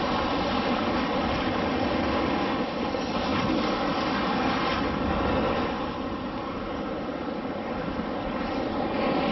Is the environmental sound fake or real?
real